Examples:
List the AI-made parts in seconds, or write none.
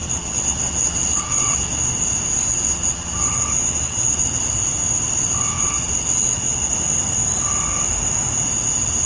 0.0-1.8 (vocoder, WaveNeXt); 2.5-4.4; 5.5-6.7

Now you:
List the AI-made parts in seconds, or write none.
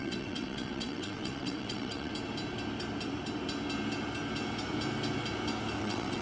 0.0-2.1 (vocoder, WaveNeXt); 5.8-6.2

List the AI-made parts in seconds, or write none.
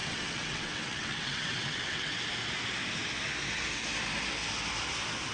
0.0-2.2 (vocoder, WaveNeXt)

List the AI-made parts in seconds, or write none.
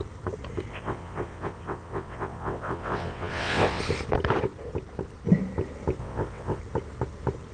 0.7-3.8 (vocoder, WaveNeXt); 6.0-6.6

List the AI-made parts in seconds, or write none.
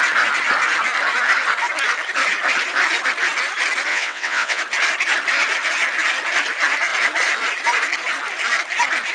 3.9-4.6 (vocoder, WaveNeXt)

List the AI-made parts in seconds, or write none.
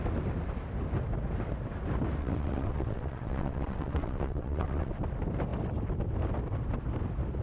2.2-4.9 (vocoder, WaveNeXt)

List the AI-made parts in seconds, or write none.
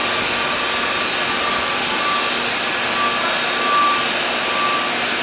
none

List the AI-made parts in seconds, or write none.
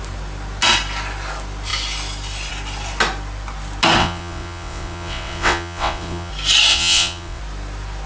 4.0-6.3 (vocoder, WaveNeXt); 6.7-7.4